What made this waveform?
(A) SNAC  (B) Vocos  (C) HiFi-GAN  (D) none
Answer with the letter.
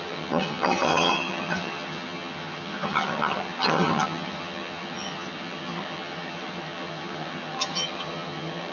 C